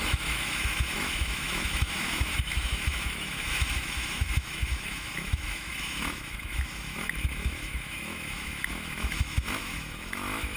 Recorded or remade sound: remade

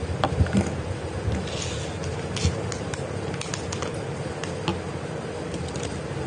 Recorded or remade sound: recorded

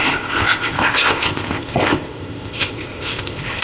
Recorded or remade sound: remade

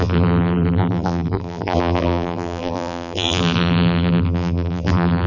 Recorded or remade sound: remade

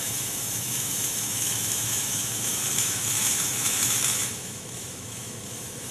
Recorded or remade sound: remade